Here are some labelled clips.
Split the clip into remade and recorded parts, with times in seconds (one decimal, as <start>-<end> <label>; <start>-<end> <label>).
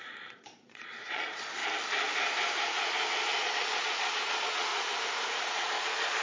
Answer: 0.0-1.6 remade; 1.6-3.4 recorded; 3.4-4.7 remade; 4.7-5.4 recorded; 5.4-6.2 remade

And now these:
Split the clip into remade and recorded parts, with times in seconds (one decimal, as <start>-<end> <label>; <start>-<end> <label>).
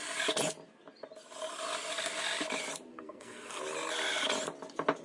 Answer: 0.0-2.9 recorded; 2.9-3.6 remade; 3.6-5.0 recorded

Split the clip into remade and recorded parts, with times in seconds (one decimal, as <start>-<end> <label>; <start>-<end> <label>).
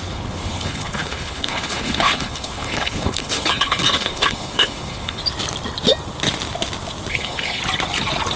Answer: 0.0-5.2 remade; 5.2-7.1 recorded; 7.1-7.6 remade; 7.6-8.4 recorded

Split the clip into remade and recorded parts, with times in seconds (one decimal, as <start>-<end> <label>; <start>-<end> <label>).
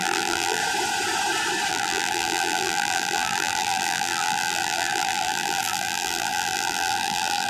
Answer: 0.0-0.6 remade; 0.6-1.7 recorded; 1.7-7.5 remade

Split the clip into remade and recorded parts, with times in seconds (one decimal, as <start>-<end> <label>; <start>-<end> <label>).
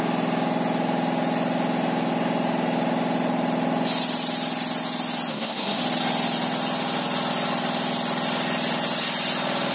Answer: 0.0-5.3 recorded; 5.3-5.8 remade; 5.8-9.7 recorded